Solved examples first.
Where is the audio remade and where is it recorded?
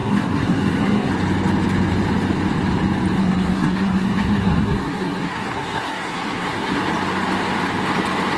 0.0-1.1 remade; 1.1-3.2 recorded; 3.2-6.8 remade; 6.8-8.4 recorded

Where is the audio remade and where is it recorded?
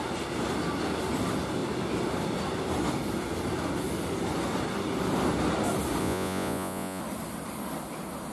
0.0-6.0 recorded; 6.0-7.0 remade; 7.0-8.3 recorded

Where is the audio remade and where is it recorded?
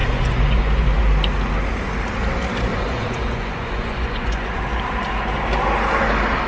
0.0-1.0 remade; 1.0-2.7 recorded; 2.7-4.6 remade; 4.6-6.5 recorded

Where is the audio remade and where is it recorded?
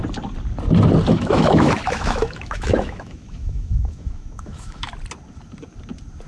0.0-1.1 recorded; 1.1-4.9 remade; 4.9-6.3 recorded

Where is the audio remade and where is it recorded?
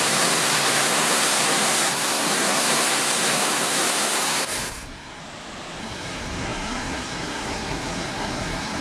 0.0-5.2 remade; 5.2-5.8 recorded; 5.8-8.8 remade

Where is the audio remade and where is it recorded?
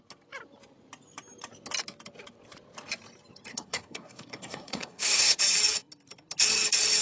0.0-3.5 recorded; 3.5-5.4 remade; 5.4-7.0 recorded